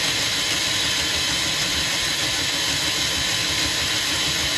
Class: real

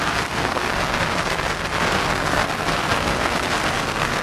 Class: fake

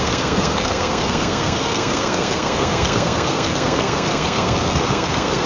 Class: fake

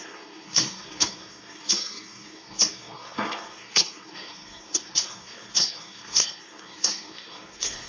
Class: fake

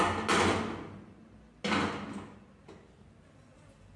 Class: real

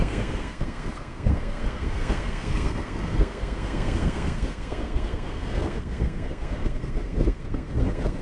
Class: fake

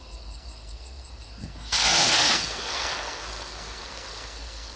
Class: fake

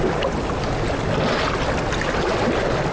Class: real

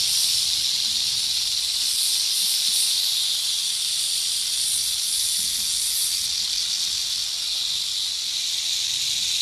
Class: real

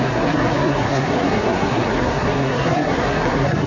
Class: fake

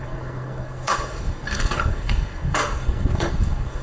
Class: fake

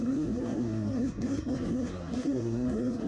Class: fake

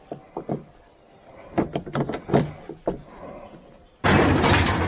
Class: real